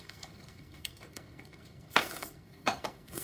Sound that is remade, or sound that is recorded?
remade